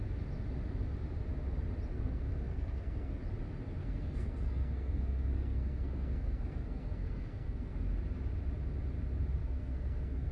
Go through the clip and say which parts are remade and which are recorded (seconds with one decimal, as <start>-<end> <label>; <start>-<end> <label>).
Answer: 0.0-1.9 recorded; 1.9-3.2 remade; 3.2-3.8 recorded; 3.8-7.9 remade; 7.9-9.4 recorded; 9.4-10.3 remade